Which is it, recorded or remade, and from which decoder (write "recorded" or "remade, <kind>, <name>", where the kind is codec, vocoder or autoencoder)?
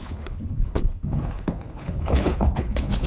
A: remade, codec, HILCodec